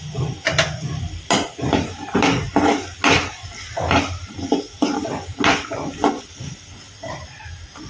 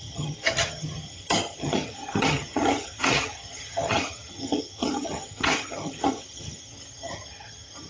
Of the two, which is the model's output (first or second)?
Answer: second